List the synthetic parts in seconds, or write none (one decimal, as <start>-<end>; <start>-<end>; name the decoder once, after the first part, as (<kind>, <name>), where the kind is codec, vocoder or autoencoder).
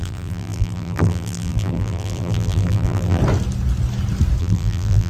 0.0-3.2 (vocoder, BigVGAN v2); 4.4-5.1